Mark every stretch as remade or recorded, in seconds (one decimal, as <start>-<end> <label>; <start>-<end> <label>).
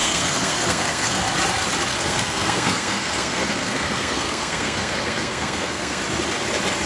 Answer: 0.0-1.2 remade; 1.2-1.9 recorded; 1.9-6.0 remade; 6.0-6.9 recorded